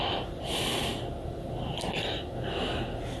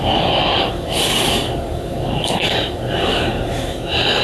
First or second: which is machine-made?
second